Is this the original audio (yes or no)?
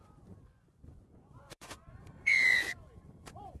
no